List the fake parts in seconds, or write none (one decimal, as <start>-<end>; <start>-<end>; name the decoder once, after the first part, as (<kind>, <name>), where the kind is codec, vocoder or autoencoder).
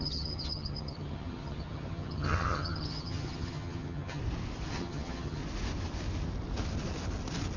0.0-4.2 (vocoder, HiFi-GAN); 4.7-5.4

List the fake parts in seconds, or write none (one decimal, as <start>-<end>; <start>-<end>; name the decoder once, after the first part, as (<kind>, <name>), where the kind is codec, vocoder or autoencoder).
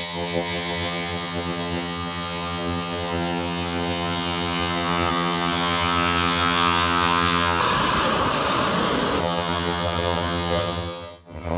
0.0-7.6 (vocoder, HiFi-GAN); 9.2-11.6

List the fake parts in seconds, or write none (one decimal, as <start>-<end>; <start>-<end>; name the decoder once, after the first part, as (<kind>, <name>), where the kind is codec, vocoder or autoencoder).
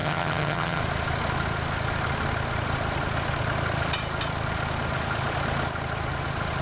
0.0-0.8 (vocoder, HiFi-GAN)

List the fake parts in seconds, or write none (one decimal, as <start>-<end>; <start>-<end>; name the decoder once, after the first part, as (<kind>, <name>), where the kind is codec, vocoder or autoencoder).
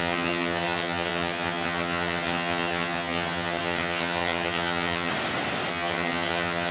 0.0-5.1 (vocoder, HiFi-GAN); 5.7-6.7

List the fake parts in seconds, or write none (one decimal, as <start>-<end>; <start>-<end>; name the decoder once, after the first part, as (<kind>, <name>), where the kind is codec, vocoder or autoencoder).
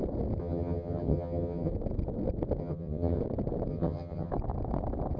0.4-1.7 (vocoder, HiFi-GAN); 2.6-3.2; 3.7-4.3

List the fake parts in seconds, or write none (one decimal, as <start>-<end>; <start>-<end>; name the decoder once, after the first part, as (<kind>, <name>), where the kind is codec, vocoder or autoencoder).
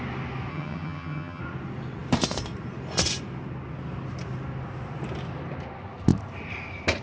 0.5-1.4 (vocoder, HiFi-GAN)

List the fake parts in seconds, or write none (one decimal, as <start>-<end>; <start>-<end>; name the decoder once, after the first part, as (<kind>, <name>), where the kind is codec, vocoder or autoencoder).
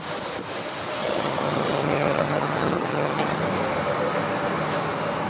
1.0-3.4 (vocoder, HiFi-GAN)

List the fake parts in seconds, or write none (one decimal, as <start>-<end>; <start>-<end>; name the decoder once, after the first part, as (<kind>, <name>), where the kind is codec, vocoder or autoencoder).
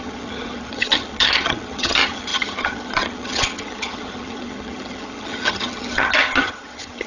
0.0-7.1 (vocoder, HiFi-GAN)